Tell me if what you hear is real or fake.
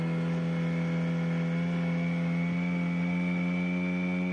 real